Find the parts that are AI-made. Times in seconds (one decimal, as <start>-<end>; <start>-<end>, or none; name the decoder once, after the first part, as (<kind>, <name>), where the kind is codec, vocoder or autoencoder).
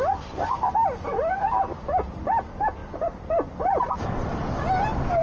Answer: none